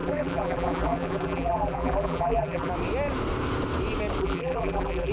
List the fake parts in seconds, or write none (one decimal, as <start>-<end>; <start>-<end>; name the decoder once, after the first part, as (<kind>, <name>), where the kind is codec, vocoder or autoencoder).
0.0-2.7 (vocoder, BigVGAN v2); 4.2-5.1